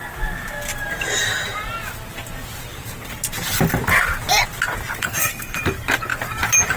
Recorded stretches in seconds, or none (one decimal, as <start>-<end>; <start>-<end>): 0.0-5.0; 5.6-6.8